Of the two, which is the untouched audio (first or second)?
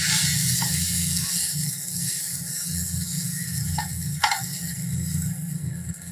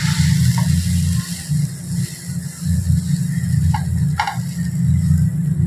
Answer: second